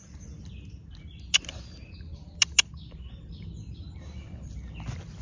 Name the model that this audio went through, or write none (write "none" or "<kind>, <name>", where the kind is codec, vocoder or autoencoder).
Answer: none